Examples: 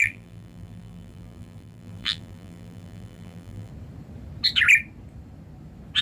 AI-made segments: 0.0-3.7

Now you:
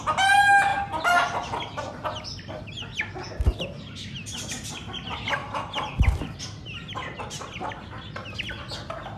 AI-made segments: 0.7-2.6; 5.4-7.7

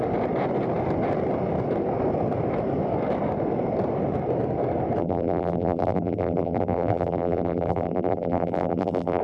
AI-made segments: 5.0-9.2

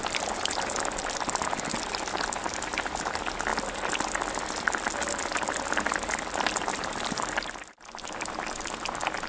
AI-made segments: 6.7-7.5

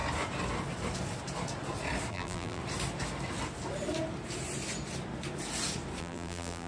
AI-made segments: 2.1-2.6; 6.0-6.7

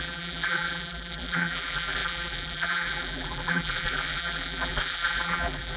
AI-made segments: 0.0-5.8

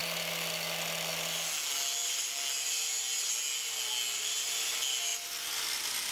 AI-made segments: none

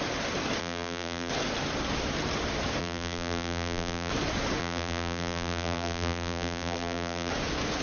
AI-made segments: 0.6-1.3; 2.8-4.1; 4.6-7.3